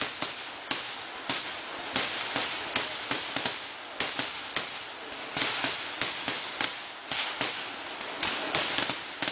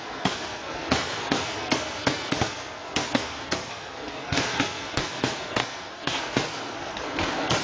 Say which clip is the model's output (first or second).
second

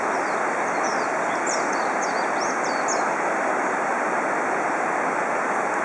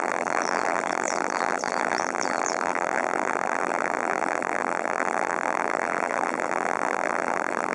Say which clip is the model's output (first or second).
second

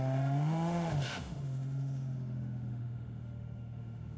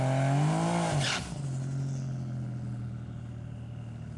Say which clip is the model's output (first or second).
first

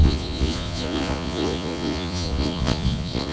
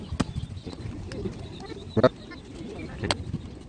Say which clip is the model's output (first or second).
first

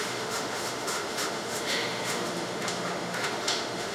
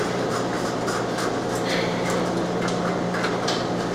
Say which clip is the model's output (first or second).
first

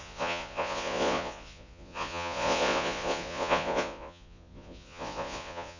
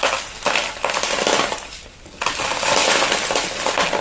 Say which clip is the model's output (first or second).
first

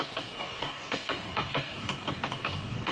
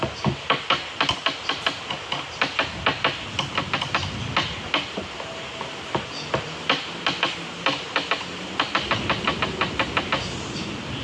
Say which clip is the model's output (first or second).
first